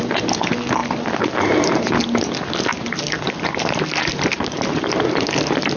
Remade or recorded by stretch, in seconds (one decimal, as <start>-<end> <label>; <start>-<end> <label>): 0.0-2.7 recorded; 2.7-4.9 remade; 4.9-5.8 recorded